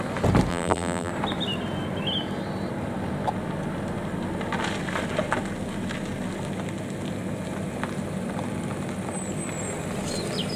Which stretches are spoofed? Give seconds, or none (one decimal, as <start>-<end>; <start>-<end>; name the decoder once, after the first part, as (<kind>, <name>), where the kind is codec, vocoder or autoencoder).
0.5-1.1 (vocoder, BigVGAN v2)